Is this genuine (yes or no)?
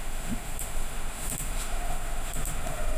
no